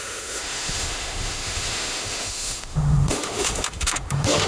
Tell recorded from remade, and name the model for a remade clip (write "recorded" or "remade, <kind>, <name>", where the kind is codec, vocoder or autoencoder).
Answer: remade, autoencoder, DAC-VAE